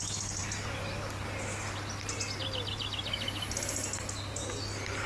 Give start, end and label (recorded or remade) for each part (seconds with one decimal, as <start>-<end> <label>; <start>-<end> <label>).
0.0-5.1 recorded